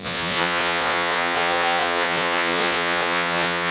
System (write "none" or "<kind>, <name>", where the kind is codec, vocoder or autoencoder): vocoder, Vocos